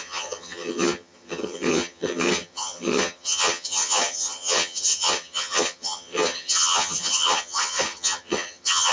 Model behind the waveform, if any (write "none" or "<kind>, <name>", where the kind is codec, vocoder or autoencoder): vocoder, HiFi-GAN